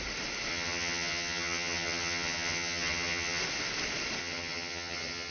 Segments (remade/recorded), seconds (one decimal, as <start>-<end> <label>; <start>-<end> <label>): 0.0-0.5 recorded; 0.5-3.4 remade; 3.4-4.2 recorded; 4.2-5.3 remade